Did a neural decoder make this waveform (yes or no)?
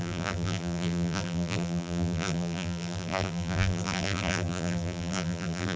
yes